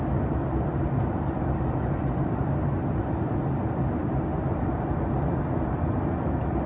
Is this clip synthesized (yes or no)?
yes